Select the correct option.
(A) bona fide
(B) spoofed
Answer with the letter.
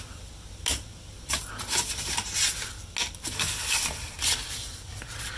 A